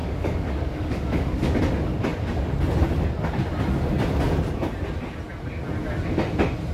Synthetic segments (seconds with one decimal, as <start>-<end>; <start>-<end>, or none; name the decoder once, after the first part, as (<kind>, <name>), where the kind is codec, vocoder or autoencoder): 0.0-1.6 (codec, DAC)